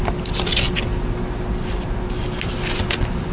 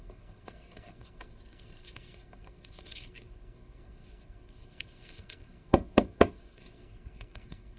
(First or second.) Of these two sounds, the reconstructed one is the second